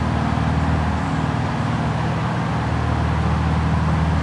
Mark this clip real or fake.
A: real